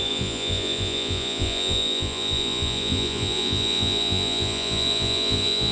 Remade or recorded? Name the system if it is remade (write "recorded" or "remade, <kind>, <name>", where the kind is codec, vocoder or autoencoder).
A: remade, vocoder, Vocos